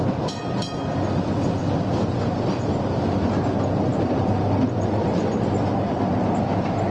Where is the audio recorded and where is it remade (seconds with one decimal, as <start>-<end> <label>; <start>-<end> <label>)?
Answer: 0.0-6.9 recorded